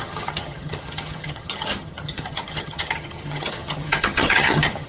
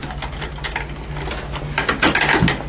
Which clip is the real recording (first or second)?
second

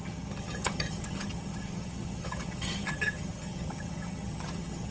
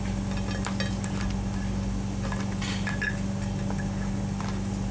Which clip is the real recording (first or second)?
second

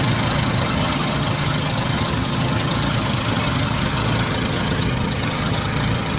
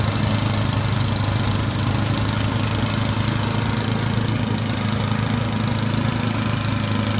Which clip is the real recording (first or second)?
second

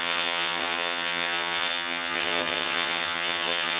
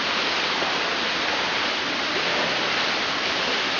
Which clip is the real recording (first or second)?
second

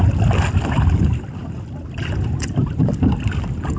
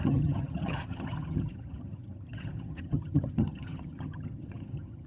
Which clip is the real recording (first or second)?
first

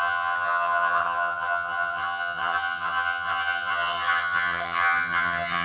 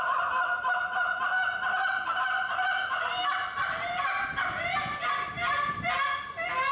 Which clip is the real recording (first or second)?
second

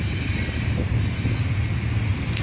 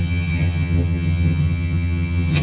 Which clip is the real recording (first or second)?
first